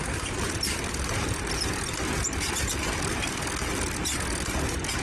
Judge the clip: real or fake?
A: fake